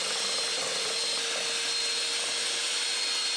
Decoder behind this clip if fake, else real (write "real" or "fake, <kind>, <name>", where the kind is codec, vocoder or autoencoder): real